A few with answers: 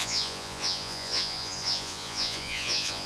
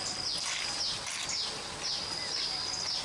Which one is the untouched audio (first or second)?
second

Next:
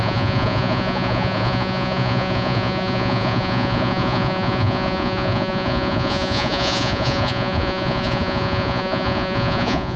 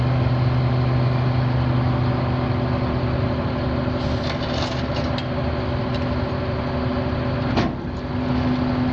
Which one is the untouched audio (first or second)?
second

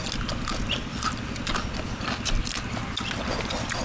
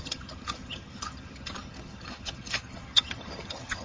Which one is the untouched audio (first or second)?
first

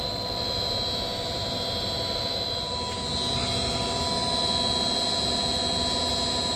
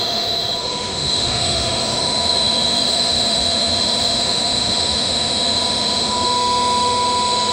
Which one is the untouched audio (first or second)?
first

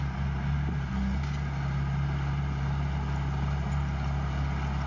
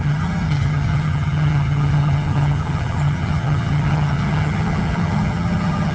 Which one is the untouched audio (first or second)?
first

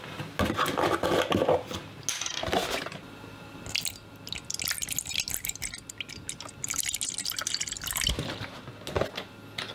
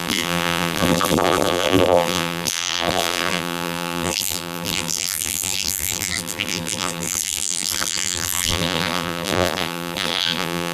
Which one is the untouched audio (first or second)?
first